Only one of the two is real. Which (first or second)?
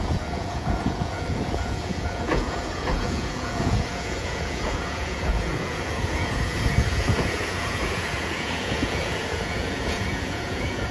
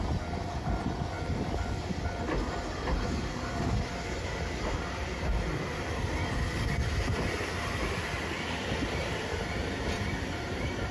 second